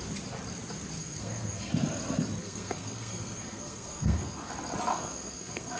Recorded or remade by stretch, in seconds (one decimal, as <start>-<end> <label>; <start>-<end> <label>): 0.0-1.0 recorded; 1.0-1.7 remade; 1.7-2.4 recorded; 2.4-4.5 remade; 4.5-4.9 recorded; 4.9-5.8 remade